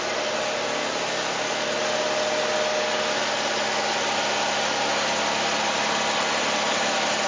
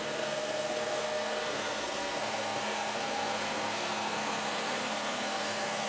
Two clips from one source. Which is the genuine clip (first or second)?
first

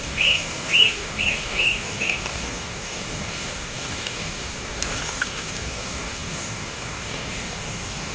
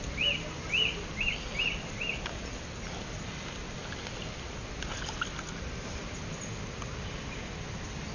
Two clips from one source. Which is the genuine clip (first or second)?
second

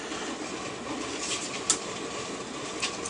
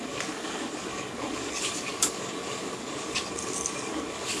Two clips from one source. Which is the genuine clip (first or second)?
first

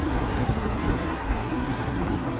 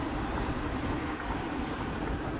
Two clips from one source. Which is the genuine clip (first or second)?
second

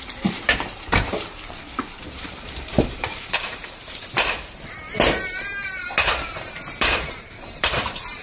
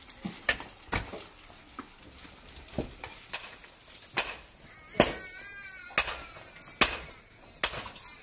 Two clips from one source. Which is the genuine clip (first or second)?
second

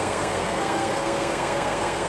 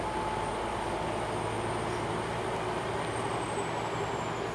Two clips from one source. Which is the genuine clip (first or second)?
second